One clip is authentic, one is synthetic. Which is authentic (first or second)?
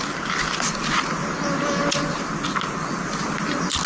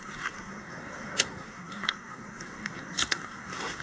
first